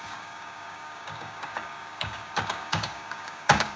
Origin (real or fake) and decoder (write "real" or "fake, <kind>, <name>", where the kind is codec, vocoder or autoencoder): fake, codec, DAC